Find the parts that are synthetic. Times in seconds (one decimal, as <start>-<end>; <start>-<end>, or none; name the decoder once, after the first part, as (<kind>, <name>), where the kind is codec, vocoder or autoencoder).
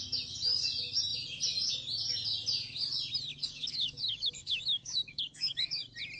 3.3-5.8 (codec, DAC)